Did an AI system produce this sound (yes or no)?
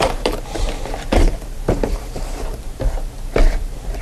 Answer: yes